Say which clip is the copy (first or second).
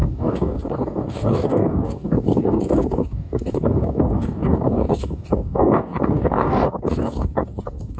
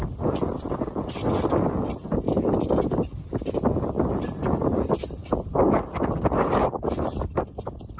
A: first